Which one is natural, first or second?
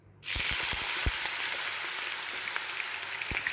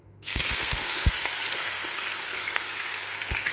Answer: first